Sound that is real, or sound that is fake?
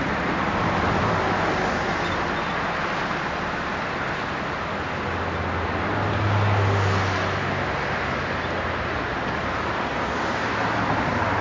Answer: real